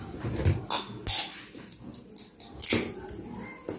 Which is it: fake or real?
real